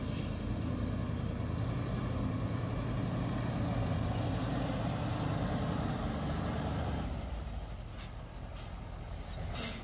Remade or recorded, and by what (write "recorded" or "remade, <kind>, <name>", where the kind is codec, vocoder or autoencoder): recorded